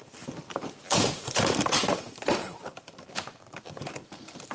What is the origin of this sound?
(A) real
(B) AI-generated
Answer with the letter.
B